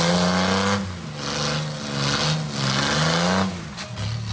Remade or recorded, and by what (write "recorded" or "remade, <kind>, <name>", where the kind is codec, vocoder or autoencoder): recorded